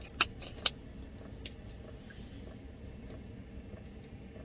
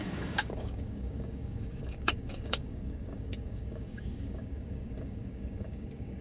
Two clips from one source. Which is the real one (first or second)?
first